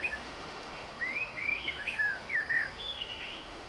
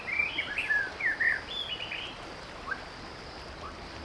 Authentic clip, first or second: second